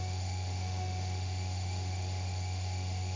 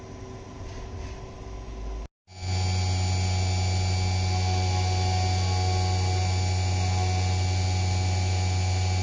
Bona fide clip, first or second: second